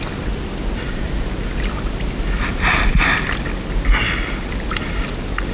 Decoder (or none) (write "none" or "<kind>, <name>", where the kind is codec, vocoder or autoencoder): none